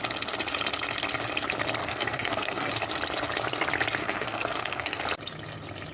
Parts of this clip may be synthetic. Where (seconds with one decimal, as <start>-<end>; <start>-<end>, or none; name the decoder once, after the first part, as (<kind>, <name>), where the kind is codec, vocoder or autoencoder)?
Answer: 1.8-2.7 (codec, SNAC); 4.0-5.0

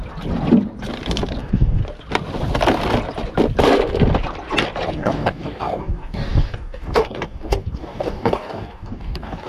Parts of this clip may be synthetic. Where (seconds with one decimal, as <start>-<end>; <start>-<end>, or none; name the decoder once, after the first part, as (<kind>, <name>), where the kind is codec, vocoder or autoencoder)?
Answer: 1.4-1.8 (codec, DAC); 4.9-9.5

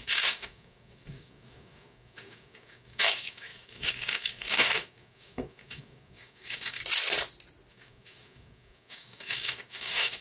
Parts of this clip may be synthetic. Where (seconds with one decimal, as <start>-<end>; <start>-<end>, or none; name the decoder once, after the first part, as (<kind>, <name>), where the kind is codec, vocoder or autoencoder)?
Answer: 0.0-6.8 (codec, DAC); 7.7-10.2

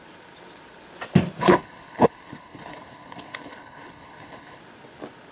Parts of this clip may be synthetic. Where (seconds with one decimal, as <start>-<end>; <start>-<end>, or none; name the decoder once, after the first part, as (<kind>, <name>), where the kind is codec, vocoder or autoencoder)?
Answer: 1.4-4.6 (codec, HILCodec)